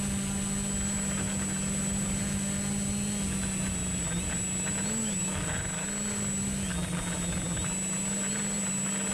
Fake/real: real